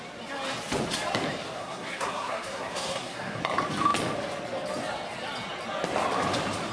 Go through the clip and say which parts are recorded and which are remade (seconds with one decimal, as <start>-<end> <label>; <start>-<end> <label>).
0.0-1.6 recorded; 1.6-3.4 remade; 3.4-6.7 recorded